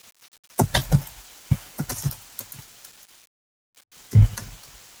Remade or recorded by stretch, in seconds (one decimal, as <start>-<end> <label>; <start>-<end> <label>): 0.0-5.0 recorded